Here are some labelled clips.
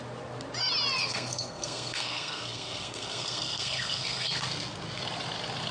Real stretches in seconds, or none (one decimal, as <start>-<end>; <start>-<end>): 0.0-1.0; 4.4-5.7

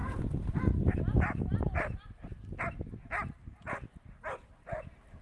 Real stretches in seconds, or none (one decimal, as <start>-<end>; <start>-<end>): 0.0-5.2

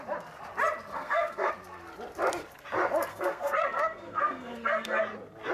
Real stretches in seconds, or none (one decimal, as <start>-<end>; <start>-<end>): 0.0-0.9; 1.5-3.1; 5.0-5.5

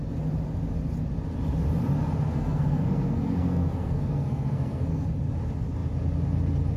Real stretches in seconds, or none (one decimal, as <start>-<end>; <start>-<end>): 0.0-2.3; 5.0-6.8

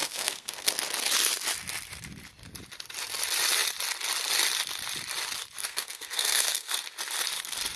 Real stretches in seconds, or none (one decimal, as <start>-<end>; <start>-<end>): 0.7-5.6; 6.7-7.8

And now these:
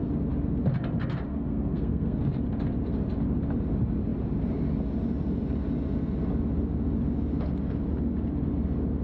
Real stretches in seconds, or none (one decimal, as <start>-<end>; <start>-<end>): 0.0-1.3; 2.2-9.0

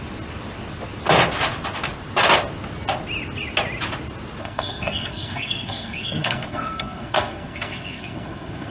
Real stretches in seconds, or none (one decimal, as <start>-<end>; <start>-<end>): 0.0-4.4

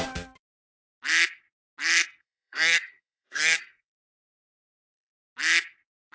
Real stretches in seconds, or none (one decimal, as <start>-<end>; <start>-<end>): 0.0-2.2; 5.1-6.1